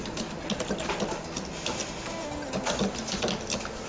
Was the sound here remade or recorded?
recorded